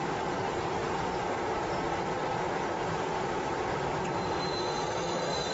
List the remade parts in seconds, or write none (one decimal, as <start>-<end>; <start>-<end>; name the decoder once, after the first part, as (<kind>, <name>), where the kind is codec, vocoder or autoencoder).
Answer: 0.0-0.8 (vocoder, BigVGAN v2); 1.5-4.5